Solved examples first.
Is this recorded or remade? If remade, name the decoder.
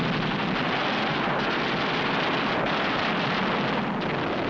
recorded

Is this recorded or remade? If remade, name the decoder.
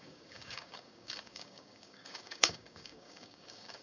remade, codec, DAC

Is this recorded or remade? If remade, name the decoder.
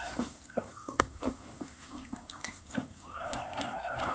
remade, codec, SNAC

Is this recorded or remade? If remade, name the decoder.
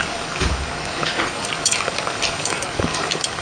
remade, codec, DAC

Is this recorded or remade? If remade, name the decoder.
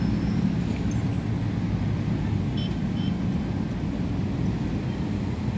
recorded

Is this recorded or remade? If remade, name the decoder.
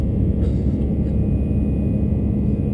recorded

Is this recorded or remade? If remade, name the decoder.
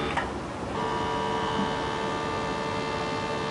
recorded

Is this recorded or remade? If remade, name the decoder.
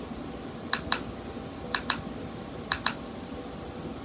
recorded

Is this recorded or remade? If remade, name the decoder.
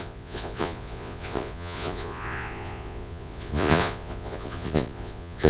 remade, vocoder, Vocos